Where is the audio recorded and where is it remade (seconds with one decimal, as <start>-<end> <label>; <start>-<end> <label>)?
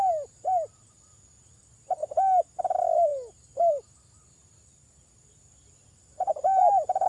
0.0-7.1 recorded